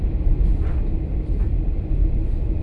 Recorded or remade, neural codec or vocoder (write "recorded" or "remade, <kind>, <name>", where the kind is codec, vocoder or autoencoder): recorded